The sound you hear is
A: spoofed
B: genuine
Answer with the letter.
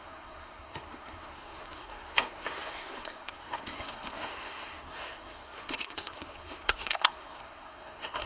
A